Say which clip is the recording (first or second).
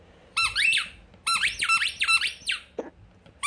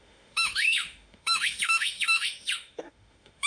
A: first